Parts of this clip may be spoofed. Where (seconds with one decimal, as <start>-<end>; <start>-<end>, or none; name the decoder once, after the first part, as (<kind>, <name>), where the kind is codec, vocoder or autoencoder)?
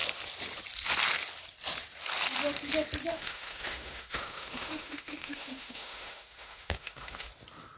3.1-7.3 (autoencoder, DAC-VAE)